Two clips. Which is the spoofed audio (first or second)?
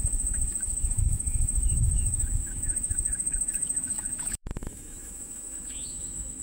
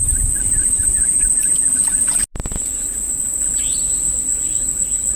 first